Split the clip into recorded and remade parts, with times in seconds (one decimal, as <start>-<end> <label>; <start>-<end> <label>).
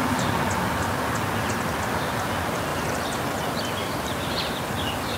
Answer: 0.0-2.7 recorded; 2.7-3.2 remade; 3.2-3.8 recorded; 3.8-4.5 remade; 4.5-5.2 recorded